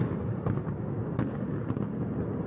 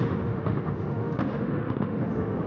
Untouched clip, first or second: first